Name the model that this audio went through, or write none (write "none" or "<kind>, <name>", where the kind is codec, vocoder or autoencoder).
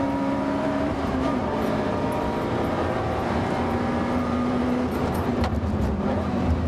vocoder, BigVGAN v2